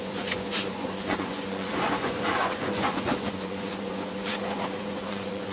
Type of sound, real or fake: fake